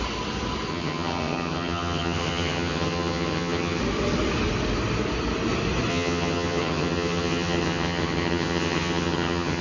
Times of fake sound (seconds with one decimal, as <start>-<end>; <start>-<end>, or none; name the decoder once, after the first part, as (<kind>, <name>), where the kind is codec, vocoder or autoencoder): 0.7-3.8 (vocoder, HiFi-GAN); 5.9-9.6